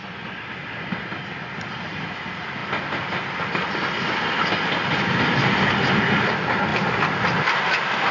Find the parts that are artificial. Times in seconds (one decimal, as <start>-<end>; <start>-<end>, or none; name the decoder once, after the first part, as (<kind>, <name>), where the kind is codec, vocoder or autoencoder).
none